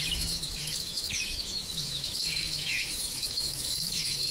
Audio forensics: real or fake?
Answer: fake